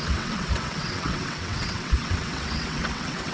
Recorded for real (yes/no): no